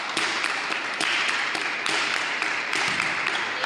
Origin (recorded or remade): remade